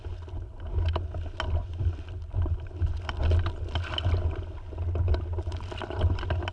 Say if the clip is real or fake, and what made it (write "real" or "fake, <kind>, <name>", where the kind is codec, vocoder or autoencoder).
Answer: real